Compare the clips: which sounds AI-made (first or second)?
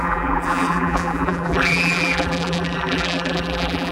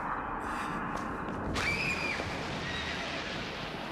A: first